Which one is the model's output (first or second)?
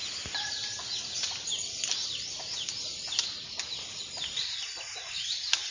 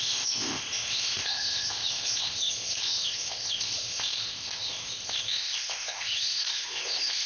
second